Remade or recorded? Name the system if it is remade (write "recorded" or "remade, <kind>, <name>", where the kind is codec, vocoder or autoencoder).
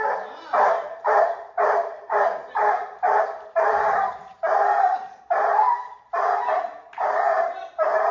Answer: remade, vocoder, BigVGAN v2